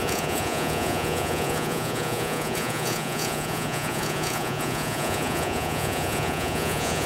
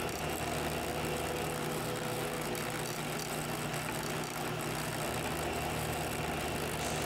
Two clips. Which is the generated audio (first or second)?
first